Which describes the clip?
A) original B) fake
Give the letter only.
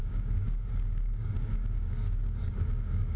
B